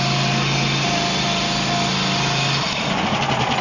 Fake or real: real